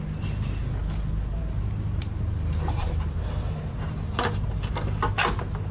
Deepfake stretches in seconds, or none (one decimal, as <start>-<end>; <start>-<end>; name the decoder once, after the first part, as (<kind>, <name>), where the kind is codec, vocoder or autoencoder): none